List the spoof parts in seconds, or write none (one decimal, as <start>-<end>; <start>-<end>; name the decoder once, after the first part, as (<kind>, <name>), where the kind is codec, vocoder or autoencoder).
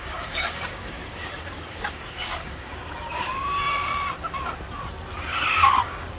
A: 0.0-3.9 (codec, DAC); 5.6-6.2